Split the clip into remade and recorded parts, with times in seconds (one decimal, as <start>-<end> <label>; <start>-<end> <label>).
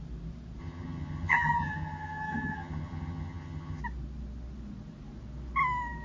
0.0-0.6 recorded; 0.6-3.8 remade; 3.8-6.0 recorded